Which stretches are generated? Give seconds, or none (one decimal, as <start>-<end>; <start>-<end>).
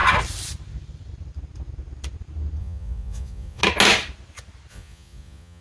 2.6-3.6; 4.7-5.6